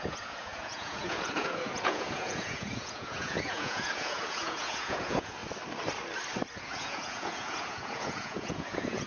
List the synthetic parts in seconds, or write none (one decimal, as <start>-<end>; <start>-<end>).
0.0-5.4; 6.6-9.1